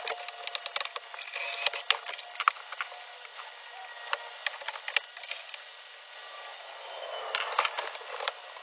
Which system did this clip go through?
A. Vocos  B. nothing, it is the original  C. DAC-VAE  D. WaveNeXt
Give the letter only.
B